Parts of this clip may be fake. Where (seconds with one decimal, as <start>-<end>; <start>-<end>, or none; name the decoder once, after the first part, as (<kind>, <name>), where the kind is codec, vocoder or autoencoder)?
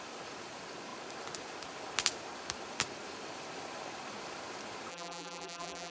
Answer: 4.9-5.9 (vocoder, BigVGAN v2)